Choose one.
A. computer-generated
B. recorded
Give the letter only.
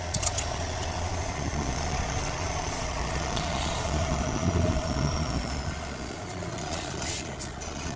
A